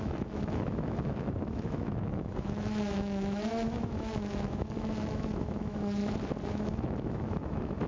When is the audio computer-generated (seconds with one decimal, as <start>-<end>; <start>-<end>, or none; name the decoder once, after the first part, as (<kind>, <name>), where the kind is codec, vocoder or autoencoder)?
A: 0.0-6.0 (autoencoder, DAC-VAE); 6.5-7.9